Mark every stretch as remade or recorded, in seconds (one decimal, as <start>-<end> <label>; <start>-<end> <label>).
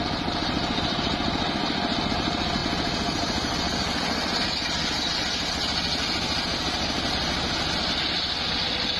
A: 0.0-9.0 recorded